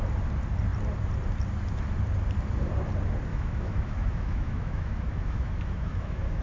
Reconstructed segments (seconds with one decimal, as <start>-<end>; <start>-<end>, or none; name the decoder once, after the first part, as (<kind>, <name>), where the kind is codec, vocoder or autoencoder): 3.3-6.4 (autoencoder, DAC-VAE)